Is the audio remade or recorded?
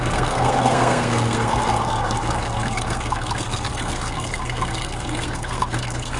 remade